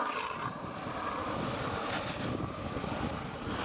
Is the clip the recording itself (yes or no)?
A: yes